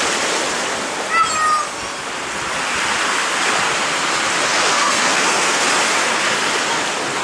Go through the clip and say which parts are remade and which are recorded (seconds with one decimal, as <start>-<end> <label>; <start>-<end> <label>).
0.0-4.5 recorded; 4.5-5.6 remade; 5.6-7.2 recorded